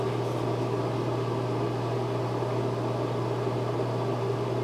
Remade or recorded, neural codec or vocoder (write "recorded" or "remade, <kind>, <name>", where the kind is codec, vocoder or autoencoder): recorded